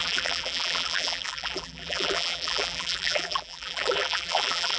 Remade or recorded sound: remade